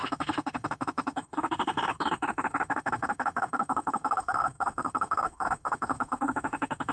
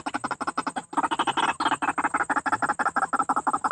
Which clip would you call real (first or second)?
second